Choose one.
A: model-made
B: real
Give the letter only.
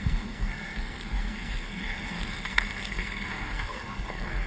A